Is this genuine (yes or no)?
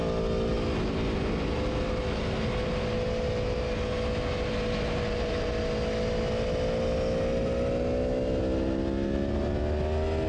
yes